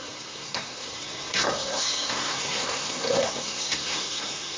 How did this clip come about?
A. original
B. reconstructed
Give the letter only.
B